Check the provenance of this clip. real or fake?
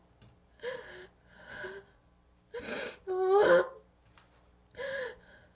real